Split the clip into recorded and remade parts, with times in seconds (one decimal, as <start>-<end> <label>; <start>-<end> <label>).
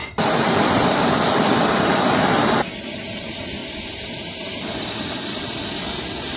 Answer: 0.0-1.7 remade; 1.7-3.6 recorded; 3.6-5.1 remade; 5.1-6.4 recorded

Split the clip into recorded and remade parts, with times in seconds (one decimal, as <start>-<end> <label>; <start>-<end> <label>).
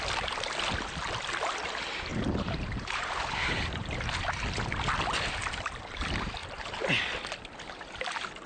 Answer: 0.0-2.1 recorded; 2.1-4.3 remade; 4.3-8.5 recorded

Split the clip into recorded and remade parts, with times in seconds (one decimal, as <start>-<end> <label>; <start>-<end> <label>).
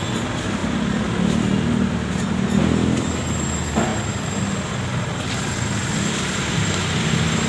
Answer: 0.0-7.5 recorded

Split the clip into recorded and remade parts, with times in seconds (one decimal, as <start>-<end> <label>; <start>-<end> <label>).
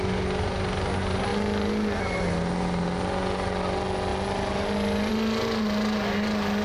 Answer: 0.0-6.6 recorded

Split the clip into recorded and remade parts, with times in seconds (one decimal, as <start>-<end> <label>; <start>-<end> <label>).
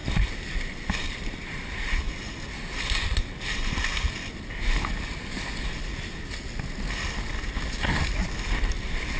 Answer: 0.0-2.1 remade; 2.1-9.2 recorded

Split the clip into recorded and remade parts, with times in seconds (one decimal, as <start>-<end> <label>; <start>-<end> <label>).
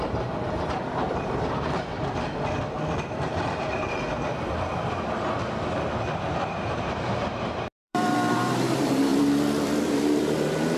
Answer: 0.0-1.9 remade; 1.9-2.9 recorded; 2.9-4.3 remade; 4.3-6.4 recorded; 6.4-9.1 remade; 9.1-9.8 recorded; 9.8-10.8 remade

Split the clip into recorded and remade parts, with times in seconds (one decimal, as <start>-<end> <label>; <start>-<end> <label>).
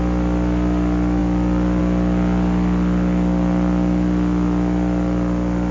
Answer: 0.0-1.2 recorded; 1.2-1.8 remade; 1.8-5.7 recorded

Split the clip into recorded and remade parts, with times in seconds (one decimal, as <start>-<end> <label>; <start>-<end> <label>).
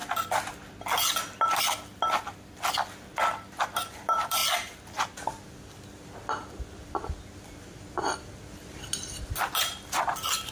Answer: 0.0-3.6 recorded; 3.6-4.4 remade; 4.4-9.2 recorded; 9.2-10.5 remade